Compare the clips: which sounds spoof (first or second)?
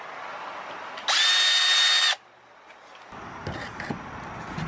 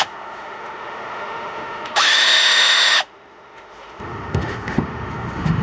second